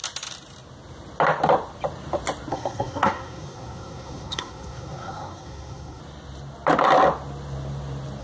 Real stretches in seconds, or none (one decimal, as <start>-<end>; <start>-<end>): 0.0-2.5; 6.0-8.2